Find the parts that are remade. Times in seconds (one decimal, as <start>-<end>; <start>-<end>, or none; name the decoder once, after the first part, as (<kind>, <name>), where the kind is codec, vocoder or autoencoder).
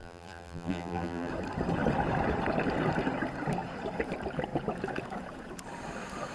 0.0-1.3 (vocoder, BigVGAN v2)